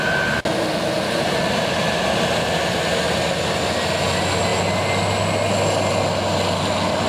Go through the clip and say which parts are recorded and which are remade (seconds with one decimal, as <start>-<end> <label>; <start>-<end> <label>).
0.0-7.1 recorded

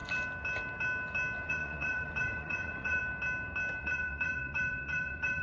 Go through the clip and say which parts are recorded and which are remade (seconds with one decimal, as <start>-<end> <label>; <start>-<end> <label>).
0.0-1.5 recorded; 1.5-3.0 remade; 3.0-3.8 recorded; 3.8-5.4 remade

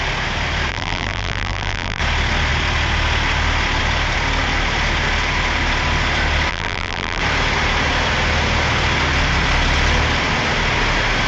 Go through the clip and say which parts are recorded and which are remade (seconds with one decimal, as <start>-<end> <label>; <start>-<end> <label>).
0.0-0.7 recorded; 0.7-2.0 remade; 2.0-6.5 recorded; 6.5-7.2 remade; 7.2-11.3 recorded

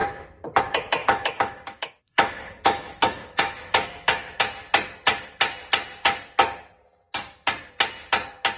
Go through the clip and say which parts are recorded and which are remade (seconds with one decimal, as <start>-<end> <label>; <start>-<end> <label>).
0.0-1.0 recorded; 1.0-4.4 remade; 4.4-8.6 recorded

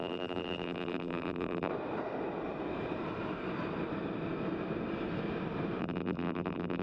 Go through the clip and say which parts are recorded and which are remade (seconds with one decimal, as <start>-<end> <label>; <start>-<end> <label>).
0.0-1.7 remade; 1.7-5.8 recorded; 5.8-6.8 remade

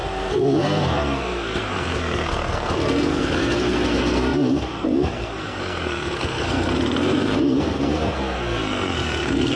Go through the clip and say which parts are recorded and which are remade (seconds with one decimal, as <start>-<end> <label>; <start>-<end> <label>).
0.0-9.6 remade

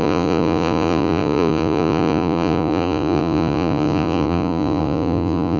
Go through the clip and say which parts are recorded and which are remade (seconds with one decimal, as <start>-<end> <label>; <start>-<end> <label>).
0.0-5.6 remade

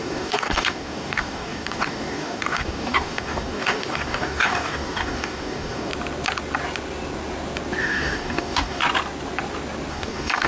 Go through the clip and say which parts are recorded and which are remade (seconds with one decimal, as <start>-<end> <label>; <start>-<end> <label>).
0.0-5.9 remade; 5.9-7.8 recorded; 7.8-8.8 remade; 8.8-9.9 recorded; 9.9-10.5 remade